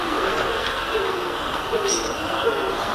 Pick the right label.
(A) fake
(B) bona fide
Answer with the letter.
A